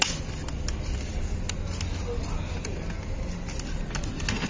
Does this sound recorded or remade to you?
recorded